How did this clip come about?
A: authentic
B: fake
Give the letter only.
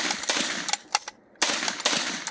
A